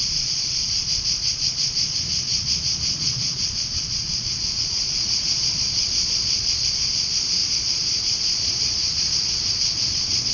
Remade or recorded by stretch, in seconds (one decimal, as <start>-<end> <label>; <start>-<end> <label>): 0.0-10.3 remade